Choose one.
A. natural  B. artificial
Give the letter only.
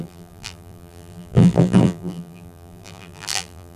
B